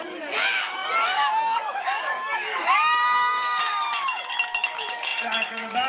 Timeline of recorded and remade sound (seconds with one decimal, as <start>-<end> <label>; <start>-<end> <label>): 0.0-5.9 remade